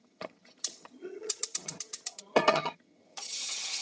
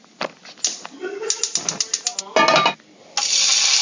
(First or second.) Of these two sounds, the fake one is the first